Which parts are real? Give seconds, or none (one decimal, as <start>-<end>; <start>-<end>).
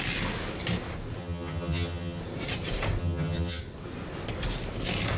0.0-1.2; 2.2-3.0; 3.6-5.2